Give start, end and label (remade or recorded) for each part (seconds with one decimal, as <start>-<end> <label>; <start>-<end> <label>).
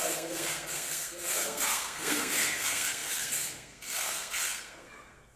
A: 0.0-5.4 remade